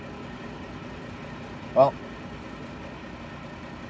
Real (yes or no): yes